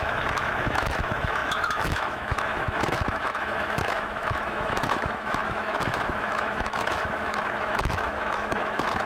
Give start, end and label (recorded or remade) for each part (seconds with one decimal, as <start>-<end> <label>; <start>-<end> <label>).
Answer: 0.0-9.1 remade